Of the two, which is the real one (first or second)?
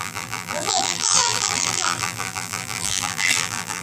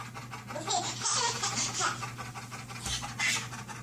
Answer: second